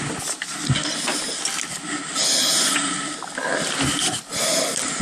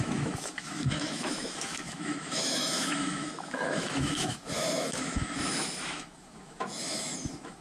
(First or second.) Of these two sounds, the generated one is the second